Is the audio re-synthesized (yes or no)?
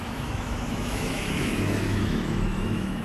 yes